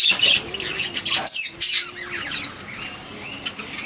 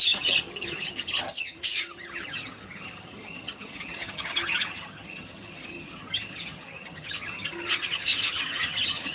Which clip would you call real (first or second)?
first